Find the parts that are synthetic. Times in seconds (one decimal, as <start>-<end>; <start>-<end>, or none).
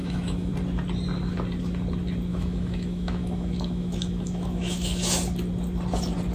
0.0-0.5; 2.3-5.0